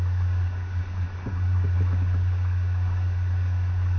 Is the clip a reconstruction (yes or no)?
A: yes